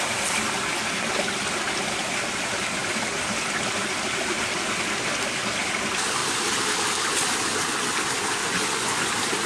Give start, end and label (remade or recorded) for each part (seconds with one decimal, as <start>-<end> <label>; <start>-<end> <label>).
0.0-8.4 recorded; 8.4-9.1 remade; 9.1-9.5 recorded